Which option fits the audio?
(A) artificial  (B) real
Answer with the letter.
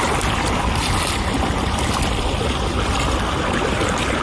B